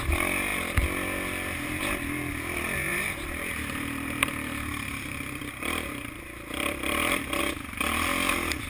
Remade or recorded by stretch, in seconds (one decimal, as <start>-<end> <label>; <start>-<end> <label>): 0.0-2.9 recorded; 2.9-7.4 remade; 7.4-8.7 recorded